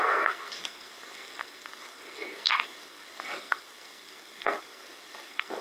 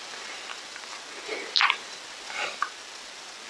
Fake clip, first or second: first